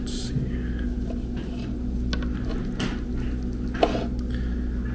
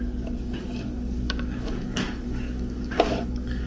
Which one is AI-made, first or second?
second